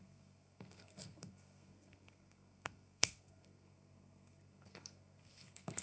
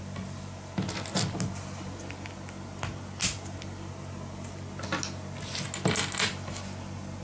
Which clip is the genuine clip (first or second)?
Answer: second